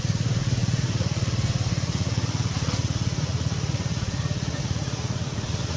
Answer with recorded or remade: remade